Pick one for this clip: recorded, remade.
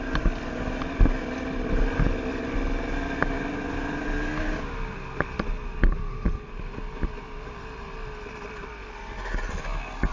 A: recorded